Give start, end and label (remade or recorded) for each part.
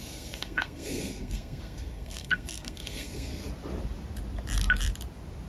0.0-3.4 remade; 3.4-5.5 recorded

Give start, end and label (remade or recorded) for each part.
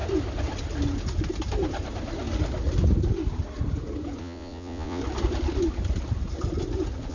0.0-4.2 recorded; 4.2-5.0 remade; 5.0-7.1 recorded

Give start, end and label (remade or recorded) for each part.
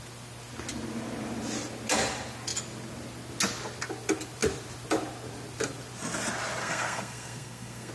0.0-6.6 recorded; 6.6-7.9 remade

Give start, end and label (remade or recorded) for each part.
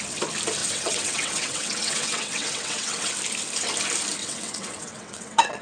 0.0-0.6 recorded; 0.6-3.1 remade; 3.1-4.2 recorded; 4.2-5.6 remade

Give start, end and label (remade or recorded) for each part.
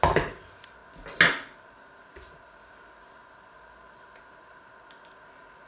0.0-5.7 recorded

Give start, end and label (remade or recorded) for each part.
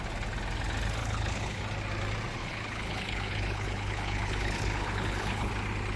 0.0-1.0 recorded; 1.0-1.6 remade; 1.6-2.4 recorded; 2.4-5.5 remade; 5.5-6.0 recorded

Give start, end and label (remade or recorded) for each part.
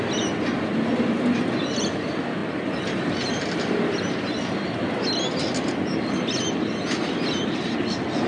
0.0-8.3 recorded